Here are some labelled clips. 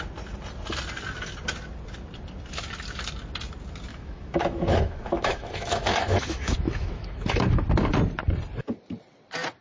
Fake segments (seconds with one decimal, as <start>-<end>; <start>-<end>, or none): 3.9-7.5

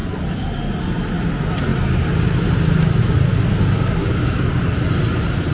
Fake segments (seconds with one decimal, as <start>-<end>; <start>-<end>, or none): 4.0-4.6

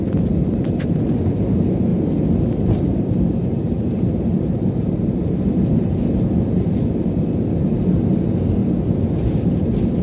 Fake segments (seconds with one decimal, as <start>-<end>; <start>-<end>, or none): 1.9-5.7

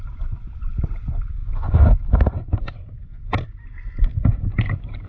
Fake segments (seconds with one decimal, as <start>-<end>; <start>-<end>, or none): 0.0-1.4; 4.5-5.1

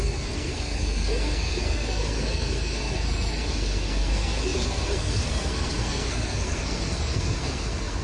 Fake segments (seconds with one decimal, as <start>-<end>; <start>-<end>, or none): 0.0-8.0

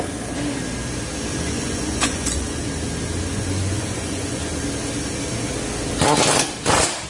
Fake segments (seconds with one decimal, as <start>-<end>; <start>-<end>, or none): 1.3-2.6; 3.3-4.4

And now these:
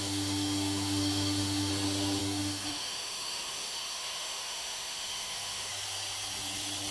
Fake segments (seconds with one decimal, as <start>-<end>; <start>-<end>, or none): 0.0-1.7; 2.2-5.7